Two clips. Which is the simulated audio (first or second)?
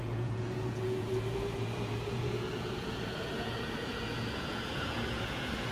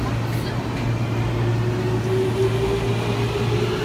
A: first